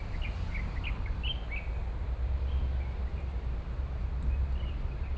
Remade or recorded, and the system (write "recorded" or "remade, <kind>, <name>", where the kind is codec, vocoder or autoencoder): recorded